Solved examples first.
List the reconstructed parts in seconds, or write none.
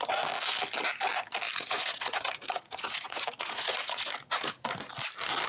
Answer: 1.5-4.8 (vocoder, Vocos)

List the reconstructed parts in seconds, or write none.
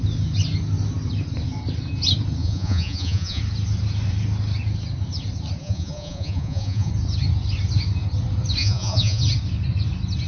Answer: 2.4-3.4 (vocoder, Vocos); 5.6-6.9; 8.6-9.2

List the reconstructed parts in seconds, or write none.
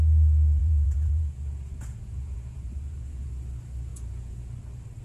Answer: 0.6-3.3 (vocoder, Vocos); 3.9-4.5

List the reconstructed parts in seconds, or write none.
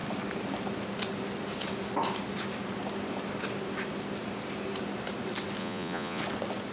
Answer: 5.6-6.2 (vocoder, Vocos)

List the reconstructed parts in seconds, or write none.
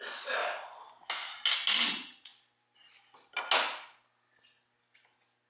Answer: 0.0-0.4 (vocoder, Vocos); 1.9-2.3